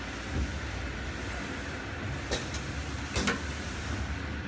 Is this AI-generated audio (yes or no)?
no